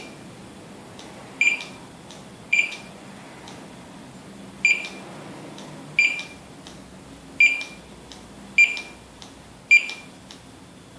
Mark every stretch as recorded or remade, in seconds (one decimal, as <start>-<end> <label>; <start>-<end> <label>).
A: 0.0-2.3 recorded; 2.3-3.2 remade; 3.2-11.0 recorded